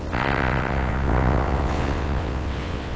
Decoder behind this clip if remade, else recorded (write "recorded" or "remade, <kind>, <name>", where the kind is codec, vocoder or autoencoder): remade, vocoder, WaveNeXt